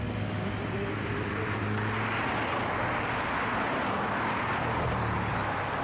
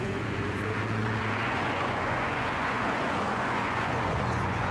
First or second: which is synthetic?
second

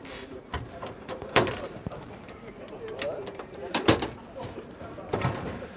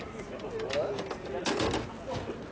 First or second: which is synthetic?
first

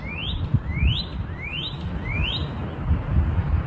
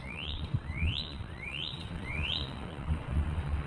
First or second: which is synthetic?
second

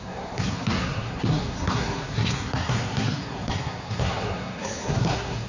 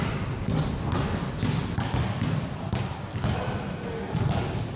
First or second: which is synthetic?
first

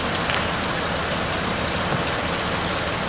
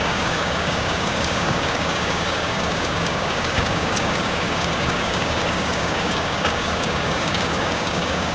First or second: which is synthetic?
second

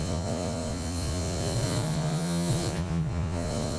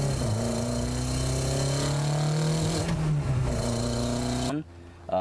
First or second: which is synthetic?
first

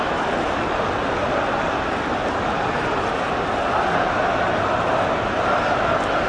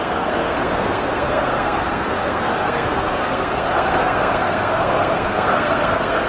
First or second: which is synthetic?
second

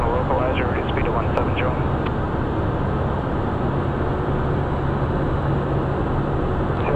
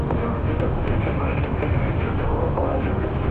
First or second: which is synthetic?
second